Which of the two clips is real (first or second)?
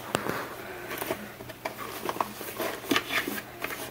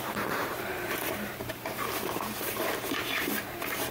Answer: first